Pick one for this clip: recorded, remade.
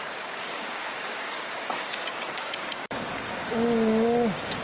remade